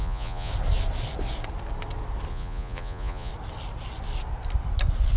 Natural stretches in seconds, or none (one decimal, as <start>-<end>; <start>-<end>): 0.5-2.3; 3.3-5.2